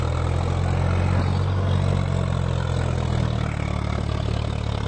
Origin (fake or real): real